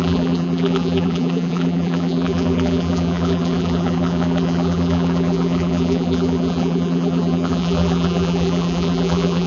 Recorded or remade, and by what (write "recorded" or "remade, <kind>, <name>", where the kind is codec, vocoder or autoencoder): remade, vocoder, BigVGAN v2